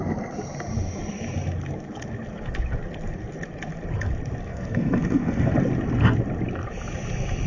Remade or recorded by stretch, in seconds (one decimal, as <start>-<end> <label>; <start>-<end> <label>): 0.0-4.5 recorded; 4.5-5.5 remade; 5.5-7.5 recorded